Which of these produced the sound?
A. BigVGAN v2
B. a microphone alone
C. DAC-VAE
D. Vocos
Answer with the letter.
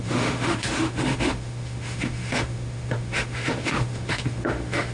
C